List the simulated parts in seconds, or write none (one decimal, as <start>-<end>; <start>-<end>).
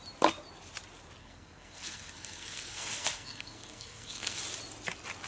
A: 1.2-4.4